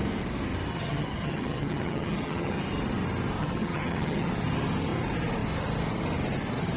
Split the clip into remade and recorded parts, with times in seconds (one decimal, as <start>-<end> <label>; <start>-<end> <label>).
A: 0.0-0.7 recorded; 0.7-2.6 remade; 2.6-3.4 recorded; 3.4-4.3 remade; 4.3-6.8 recorded